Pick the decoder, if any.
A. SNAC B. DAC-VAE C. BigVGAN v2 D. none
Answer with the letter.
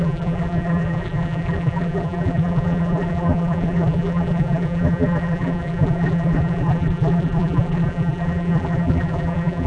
C